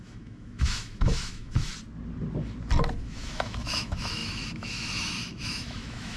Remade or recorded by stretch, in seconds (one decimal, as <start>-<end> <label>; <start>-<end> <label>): 0.0-1.7 remade; 1.7-3.0 recorded; 3.0-6.2 remade